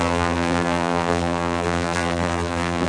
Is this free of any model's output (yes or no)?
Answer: no